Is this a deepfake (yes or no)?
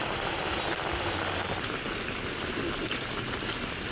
no